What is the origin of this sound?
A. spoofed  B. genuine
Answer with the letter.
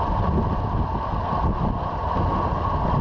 B